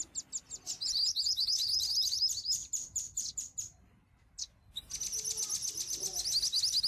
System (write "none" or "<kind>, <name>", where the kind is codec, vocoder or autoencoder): none